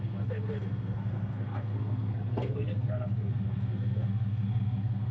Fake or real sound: fake